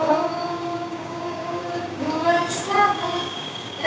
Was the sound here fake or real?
fake